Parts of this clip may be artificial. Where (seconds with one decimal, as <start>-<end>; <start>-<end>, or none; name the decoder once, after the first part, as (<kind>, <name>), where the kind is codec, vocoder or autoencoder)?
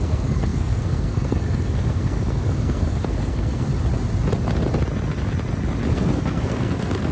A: 0.0-3.7 (codec, SNAC); 5.9-7.1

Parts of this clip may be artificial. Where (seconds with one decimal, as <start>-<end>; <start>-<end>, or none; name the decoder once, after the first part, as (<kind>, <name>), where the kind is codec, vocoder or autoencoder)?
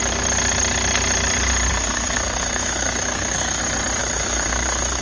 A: 1.7-3.6 (codec, SNAC); 4.0-5.0